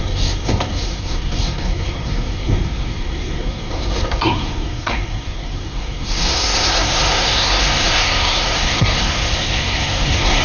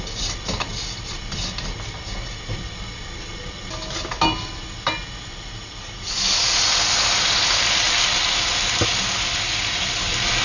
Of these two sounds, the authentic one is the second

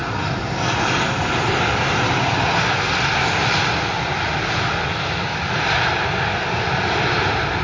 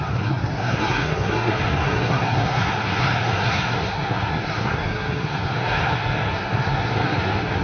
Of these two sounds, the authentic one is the first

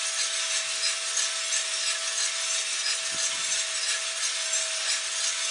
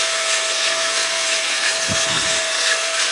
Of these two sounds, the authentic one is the first